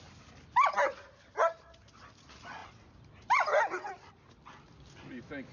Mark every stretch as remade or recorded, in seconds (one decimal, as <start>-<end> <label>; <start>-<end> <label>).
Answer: 0.0-2.6 recorded; 2.6-3.9 remade; 3.9-5.5 recorded